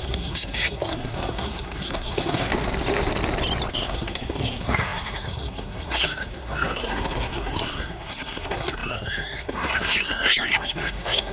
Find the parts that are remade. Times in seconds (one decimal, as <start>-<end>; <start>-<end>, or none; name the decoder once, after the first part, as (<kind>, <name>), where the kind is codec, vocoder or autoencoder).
0.0-2.5 (codec, SNAC); 3.7-11.3